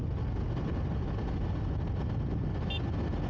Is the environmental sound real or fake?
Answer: real